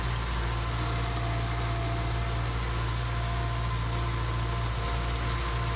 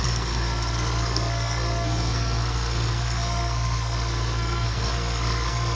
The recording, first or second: first